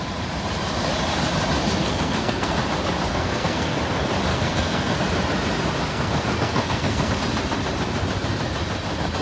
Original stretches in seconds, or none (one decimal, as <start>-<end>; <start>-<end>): 0.0-1.8; 2.6-3.1; 3.8-4.3; 5.0-5.9; 7.1-9.2